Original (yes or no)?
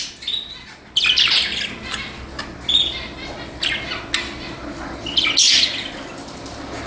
yes